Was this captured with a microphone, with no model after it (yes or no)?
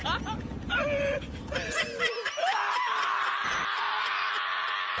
yes